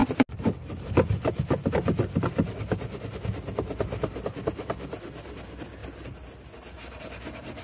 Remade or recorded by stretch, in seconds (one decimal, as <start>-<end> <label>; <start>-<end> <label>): 0.0-7.6 recorded